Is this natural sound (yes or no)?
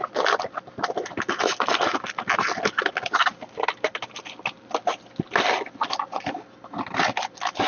yes